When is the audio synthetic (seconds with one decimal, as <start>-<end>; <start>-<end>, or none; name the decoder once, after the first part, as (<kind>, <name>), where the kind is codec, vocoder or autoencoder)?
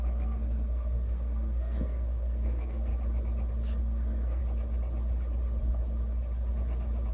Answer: 0.0-2.9 (codec, SNAC); 3.8-4.4